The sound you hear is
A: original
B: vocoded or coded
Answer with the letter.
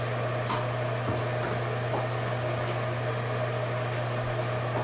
A